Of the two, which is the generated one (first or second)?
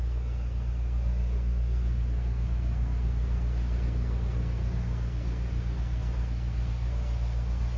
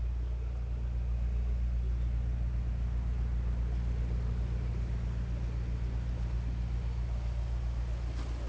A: first